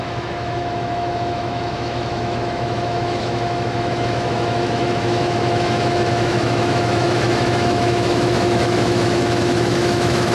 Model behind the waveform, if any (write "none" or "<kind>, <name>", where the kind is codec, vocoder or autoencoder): autoencoder, DAC-VAE